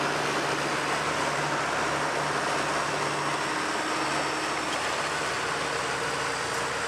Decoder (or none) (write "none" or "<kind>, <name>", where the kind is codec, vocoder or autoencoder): none